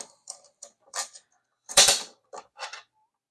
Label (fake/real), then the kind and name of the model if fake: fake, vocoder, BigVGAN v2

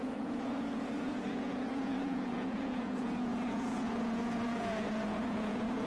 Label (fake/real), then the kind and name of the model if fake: fake, vocoder, Vocos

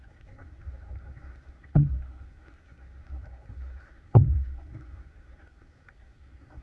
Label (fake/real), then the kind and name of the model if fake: fake, codec, SNAC